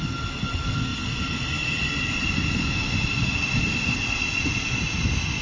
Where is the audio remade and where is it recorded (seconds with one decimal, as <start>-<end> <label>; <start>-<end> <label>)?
0.0-5.4 recorded